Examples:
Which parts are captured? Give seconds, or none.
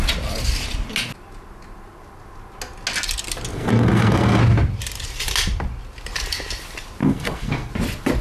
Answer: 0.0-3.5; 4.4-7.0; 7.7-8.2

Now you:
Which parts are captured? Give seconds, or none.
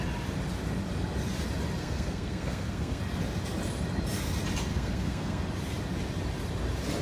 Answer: 0.0-1.8; 3.0-4.7; 5.4-7.0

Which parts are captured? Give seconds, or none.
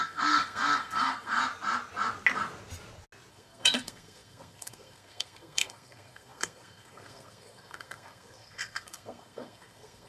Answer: 1.4-3.3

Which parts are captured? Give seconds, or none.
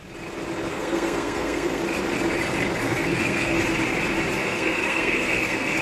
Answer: 0.0-0.7; 1.8-2.8; 3.6-4.4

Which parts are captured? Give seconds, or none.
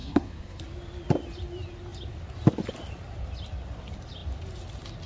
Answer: 0.6-5.1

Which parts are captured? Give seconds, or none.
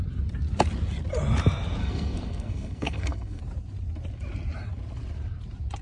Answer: 0.0-1.8; 3.4-5.8